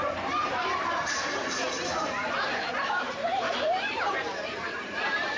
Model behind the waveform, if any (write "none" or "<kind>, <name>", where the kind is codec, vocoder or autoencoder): vocoder, BigVGAN v2